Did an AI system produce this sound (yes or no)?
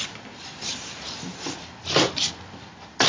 no